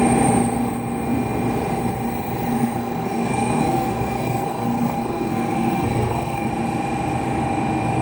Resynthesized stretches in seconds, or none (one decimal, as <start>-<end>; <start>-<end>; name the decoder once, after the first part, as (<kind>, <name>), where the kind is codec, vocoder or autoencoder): 2.5-6.5 (codec, SNAC)